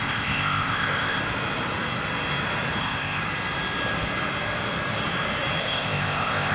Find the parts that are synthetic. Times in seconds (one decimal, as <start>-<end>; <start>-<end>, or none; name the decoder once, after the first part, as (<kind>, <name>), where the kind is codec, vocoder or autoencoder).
0.0-1.2 (codec, ZipCodec); 2.8-3.2; 5.6-6.5

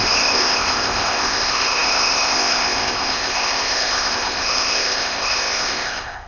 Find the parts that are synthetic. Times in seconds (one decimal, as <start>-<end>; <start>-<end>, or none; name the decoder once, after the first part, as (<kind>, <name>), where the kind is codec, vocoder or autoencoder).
0.0-6.3 (codec, ZipCodec)

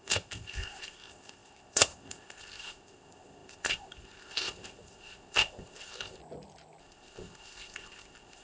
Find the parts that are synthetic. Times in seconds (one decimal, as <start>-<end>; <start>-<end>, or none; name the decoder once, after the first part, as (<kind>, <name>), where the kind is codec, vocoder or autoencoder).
0.0-6.2 (codec, ZipCodec); 6.8-8.4

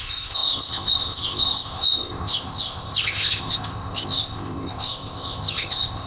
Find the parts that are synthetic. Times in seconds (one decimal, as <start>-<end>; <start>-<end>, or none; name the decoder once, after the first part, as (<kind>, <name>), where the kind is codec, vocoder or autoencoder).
0.0-6.1 (codec, ZipCodec)

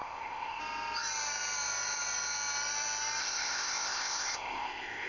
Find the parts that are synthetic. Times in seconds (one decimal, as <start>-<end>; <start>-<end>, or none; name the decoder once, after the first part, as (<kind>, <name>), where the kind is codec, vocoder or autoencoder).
0.0-0.6 (codec, ZipCodec); 3.2-5.1

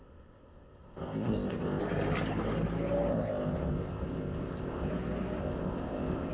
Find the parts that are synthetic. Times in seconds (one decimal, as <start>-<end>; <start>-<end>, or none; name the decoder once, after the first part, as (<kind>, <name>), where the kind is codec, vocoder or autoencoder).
0.0-1.8 (codec, ZipCodec); 3.1-4.9; 5.4-6.3